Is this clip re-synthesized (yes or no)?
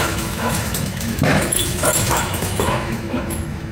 yes